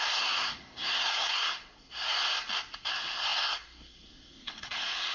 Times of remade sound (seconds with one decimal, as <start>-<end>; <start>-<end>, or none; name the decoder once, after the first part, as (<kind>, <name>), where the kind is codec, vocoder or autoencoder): 0.0-2.2 (codec, SNAC); 2.9-5.1